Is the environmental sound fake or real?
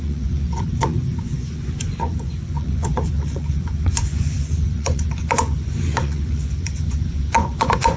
fake